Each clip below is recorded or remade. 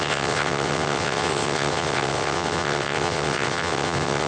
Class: remade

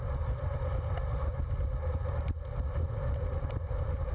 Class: recorded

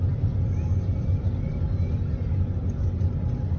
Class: recorded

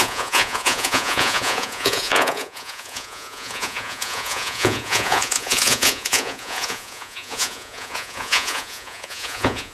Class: remade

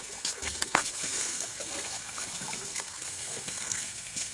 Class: remade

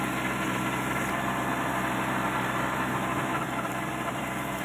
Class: recorded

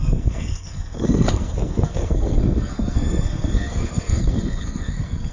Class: remade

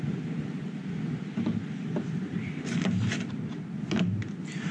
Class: recorded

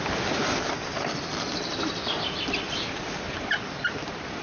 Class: recorded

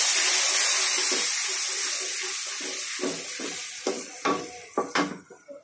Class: recorded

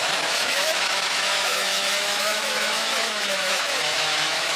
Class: remade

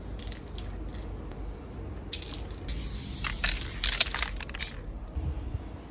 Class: recorded